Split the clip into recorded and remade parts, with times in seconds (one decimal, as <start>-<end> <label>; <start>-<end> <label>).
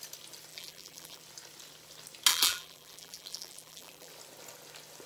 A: 0.0-0.5 recorded; 0.5-1.2 remade; 1.2-2.3 recorded; 2.3-4.1 remade; 4.1-5.1 recorded